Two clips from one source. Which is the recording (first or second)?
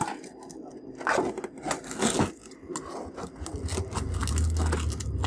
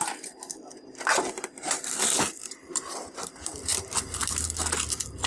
first